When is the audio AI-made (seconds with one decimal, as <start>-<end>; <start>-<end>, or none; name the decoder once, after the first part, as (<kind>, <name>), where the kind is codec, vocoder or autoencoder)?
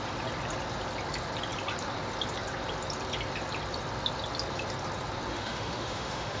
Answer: 5.3-6.4 (autoencoder, DAC-VAE)